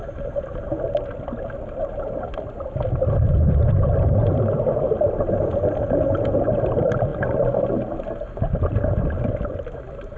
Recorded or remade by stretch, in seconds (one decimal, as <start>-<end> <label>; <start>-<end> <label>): 0.0-10.2 recorded

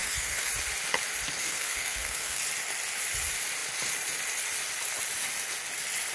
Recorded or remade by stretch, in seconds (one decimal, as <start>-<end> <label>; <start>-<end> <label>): 0.0-0.5 remade; 0.5-1.4 recorded; 1.4-2.4 remade; 2.4-6.1 recorded

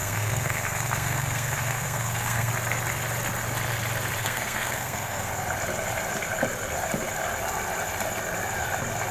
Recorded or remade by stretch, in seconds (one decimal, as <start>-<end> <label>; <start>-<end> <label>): 0.0-2.5 remade; 2.5-4.2 recorded; 4.2-5.3 remade; 5.3-9.1 recorded

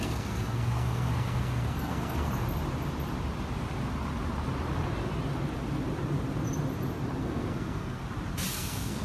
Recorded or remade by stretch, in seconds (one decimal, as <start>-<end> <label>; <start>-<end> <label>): 0.0-2.3 remade; 2.3-7.2 recorded; 7.2-8.0 remade; 8.0-8.5 recorded; 8.5-9.0 remade

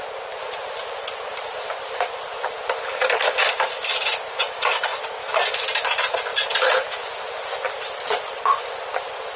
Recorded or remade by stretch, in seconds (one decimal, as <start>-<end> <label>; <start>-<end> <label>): 0.0-9.4 recorded

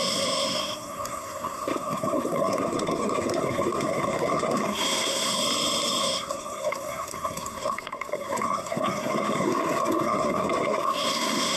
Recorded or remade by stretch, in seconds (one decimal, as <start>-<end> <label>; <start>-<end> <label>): 0.0-5.4 remade; 5.4-6.0 recorded; 6.0-11.6 remade